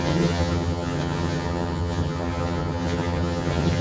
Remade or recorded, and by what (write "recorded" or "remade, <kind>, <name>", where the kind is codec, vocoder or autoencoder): remade, vocoder, HiFi-GAN